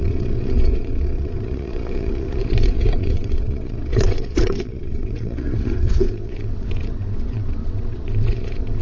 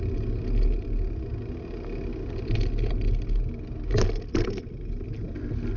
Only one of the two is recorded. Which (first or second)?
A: second